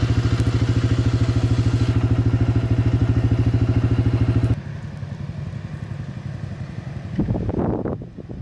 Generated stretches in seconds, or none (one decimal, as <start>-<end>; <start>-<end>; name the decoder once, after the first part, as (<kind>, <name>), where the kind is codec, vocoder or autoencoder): none